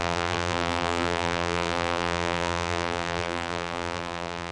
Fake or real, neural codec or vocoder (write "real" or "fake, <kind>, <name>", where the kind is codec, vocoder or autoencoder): fake, vocoder, BigVGAN v2